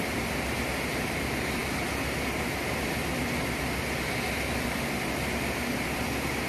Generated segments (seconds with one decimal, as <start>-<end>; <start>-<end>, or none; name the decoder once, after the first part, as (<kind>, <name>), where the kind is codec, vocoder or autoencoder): none